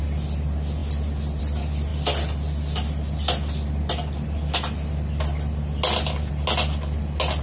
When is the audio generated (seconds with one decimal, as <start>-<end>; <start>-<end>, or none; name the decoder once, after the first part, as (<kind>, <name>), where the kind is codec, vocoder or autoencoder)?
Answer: none